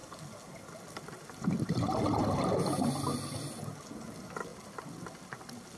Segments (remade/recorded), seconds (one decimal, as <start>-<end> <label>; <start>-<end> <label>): 0.0-5.8 recorded